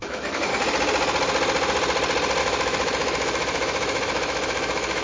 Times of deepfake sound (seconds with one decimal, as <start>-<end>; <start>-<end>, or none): 0.0-0.5; 2.4-5.0